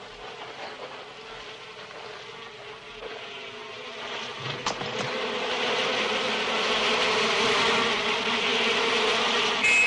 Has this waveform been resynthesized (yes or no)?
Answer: no